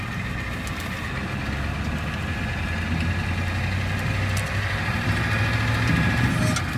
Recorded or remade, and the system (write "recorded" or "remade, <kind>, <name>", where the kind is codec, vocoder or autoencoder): recorded